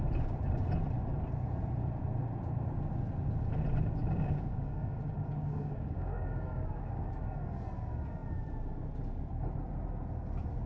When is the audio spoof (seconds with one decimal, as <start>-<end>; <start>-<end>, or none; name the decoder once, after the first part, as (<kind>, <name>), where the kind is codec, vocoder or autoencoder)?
4.0-5.0 (codec, DAC); 5.4-7.1